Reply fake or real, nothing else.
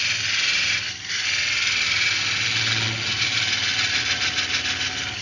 real